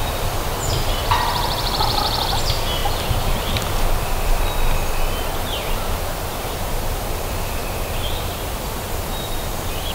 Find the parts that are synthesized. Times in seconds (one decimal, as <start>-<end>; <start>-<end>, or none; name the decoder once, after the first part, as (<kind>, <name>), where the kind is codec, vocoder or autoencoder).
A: 0.0-2.8 (vocoder, BigVGAN v2); 6.1-9.9